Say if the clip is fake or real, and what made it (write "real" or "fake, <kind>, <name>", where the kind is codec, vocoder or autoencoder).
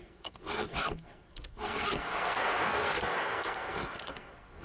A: fake, codec, SNAC